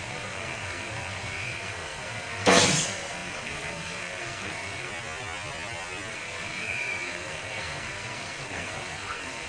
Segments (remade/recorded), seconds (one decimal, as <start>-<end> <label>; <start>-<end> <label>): 0.0-4.9 remade; 4.9-6.1 recorded; 6.1-9.5 remade